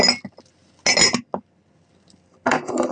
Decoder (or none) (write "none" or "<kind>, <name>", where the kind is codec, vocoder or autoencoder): none